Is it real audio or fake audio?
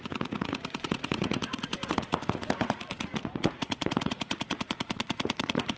fake